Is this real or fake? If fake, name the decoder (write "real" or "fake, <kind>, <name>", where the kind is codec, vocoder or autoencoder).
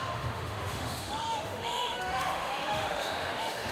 fake, autoencoder, DAC-VAE